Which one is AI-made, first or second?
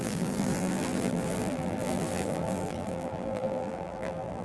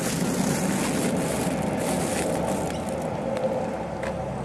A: first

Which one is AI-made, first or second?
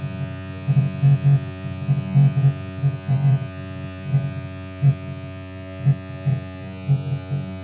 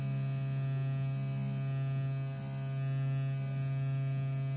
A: first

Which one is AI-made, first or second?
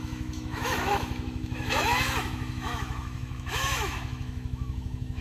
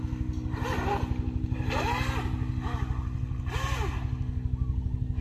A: first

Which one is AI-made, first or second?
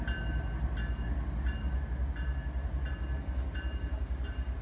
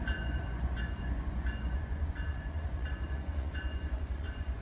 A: second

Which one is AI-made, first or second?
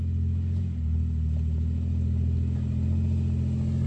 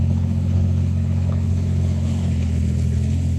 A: second